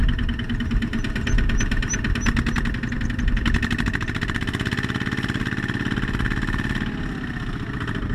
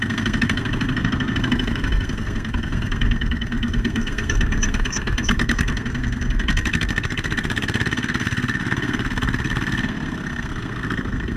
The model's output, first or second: second